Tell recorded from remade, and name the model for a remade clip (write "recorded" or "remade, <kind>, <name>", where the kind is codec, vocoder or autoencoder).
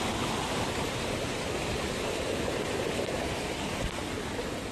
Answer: recorded